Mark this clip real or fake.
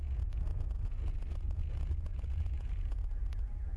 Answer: fake